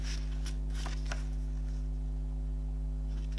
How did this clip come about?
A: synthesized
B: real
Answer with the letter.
B